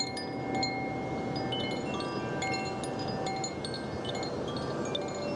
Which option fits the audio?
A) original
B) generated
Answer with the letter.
A